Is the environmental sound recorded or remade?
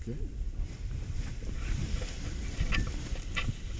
recorded